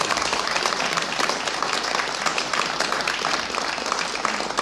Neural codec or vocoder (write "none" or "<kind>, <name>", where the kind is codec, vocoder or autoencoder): vocoder, BigVGAN v2